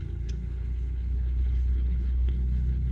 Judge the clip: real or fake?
fake